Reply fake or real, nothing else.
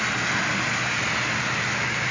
real